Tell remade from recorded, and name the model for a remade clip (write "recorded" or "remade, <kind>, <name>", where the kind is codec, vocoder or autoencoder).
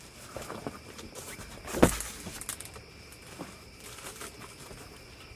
recorded